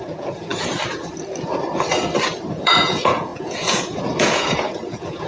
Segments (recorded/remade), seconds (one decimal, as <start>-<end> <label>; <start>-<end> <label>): 0.0-0.5 remade; 0.5-2.5 recorded; 2.5-5.3 remade